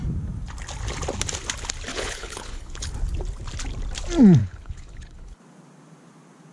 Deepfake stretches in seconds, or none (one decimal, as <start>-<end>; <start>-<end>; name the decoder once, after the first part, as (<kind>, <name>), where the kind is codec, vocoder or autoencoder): 1.9-2.9 (codec, HILCodec); 4.4-5.4